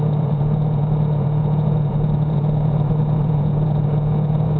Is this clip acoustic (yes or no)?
no